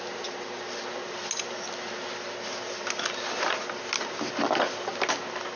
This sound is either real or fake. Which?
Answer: real